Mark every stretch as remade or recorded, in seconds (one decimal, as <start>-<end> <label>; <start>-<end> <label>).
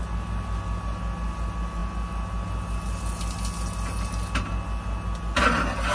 0.0-5.9 recorded